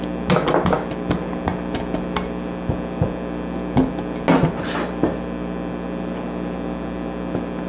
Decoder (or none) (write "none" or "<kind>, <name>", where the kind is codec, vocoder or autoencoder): none